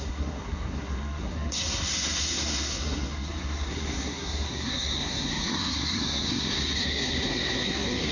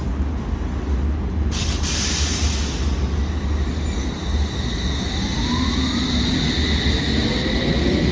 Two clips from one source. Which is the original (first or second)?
second